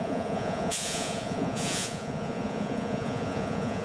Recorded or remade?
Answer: remade